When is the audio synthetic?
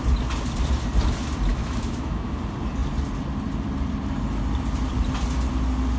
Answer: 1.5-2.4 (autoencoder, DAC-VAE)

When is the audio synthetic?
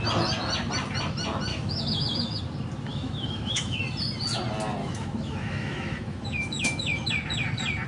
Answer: 1.5-2.4 (autoencoder, DAC-VAE); 2.9-3.8; 4.8-7.1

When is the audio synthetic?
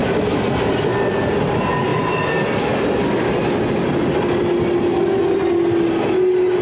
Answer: none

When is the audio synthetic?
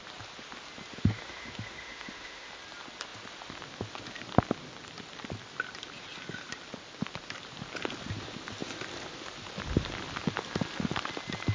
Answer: 0.9-2.5 (autoencoder, DAC-VAE)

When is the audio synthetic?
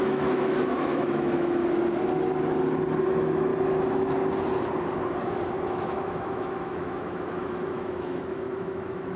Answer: 0.0-1.6 (autoencoder, DAC-VAE); 3.0-3.5; 5.7-9.2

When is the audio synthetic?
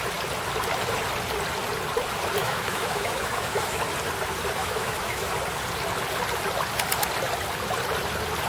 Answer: 2.4-3.8 (autoencoder, DAC-VAE); 4.6-5.3